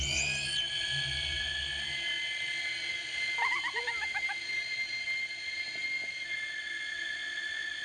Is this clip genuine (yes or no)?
yes